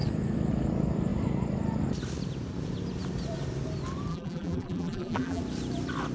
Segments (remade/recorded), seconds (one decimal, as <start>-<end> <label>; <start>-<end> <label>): 0.0-4.1 recorded; 4.1-5.4 remade; 5.4-6.1 recorded

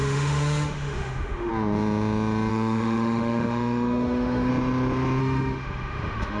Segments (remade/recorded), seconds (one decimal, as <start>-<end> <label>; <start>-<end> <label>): 0.0-1.5 remade; 1.5-2.5 recorded; 2.5-4.5 remade; 4.5-5.2 recorded; 5.2-6.4 remade

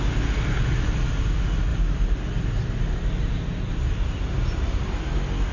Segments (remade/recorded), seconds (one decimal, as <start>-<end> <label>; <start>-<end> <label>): 0.0-1.7 recorded; 1.7-5.0 remade; 5.0-5.5 recorded